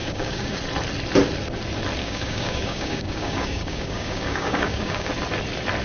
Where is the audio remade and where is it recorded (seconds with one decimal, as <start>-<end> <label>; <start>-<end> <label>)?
0.0-0.6 remade; 0.6-2.0 recorded; 2.0-5.1 remade; 5.1-5.8 recorded